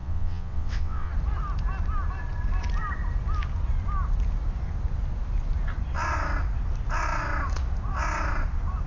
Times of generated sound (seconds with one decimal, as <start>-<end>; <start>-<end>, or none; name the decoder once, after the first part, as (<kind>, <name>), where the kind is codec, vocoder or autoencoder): 0.0-1.1 (vocoder, WaveNeXt)